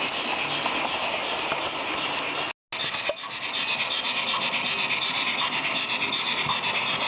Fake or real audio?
real